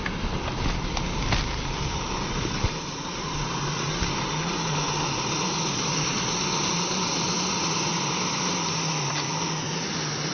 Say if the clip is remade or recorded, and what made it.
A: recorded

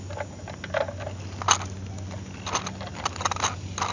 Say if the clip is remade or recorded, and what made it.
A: recorded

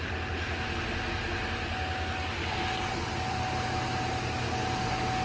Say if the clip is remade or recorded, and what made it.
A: recorded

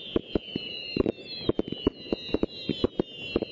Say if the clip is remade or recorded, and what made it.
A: recorded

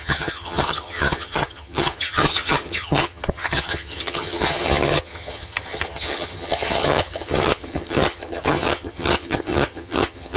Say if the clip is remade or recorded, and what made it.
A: remade, vocoder, HiFi-GAN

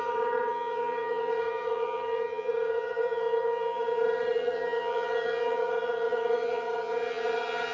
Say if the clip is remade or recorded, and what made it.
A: remade, vocoder, HiFi-GAN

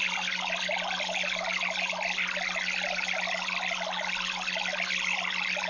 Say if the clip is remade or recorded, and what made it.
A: recorded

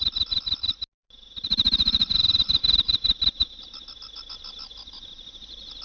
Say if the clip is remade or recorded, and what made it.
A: recorded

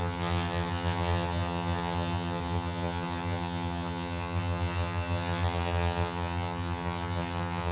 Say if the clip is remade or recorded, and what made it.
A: remade, vocoder, HiFi-GAN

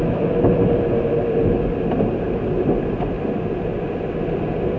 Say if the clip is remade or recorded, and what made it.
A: recorded